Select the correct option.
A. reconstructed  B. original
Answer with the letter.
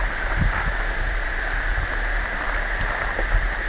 B